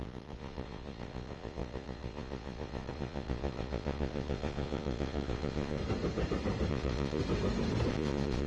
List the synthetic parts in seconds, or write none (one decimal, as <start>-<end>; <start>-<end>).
0.0-5.8; 6.7-7.2; 7.9-8.5